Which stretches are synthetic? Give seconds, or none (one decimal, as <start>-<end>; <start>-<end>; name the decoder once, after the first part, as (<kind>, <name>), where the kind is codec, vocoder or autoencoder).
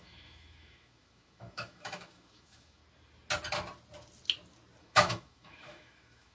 0.0-2.8 (autoencoder, DAC-VAE); 4.8-6.3